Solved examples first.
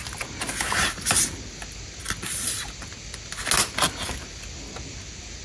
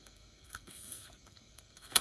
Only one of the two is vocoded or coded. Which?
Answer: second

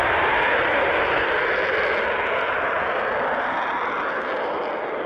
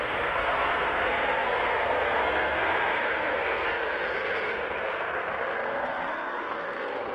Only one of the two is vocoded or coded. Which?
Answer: second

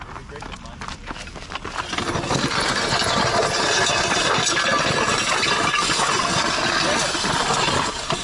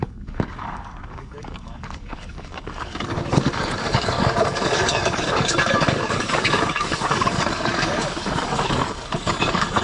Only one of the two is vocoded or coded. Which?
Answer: second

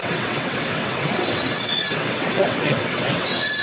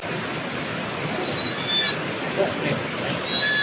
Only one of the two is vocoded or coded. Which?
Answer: first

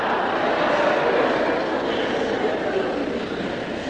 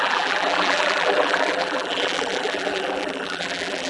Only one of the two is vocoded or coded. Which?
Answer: second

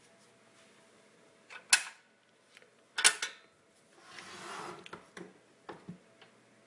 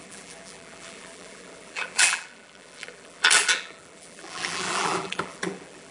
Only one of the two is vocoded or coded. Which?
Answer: second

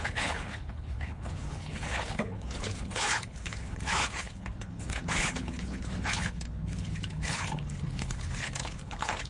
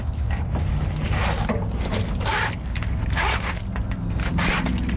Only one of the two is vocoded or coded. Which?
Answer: first